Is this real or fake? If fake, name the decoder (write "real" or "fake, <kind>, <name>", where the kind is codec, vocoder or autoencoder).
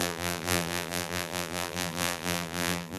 fake, vocoder, BigVGAN v2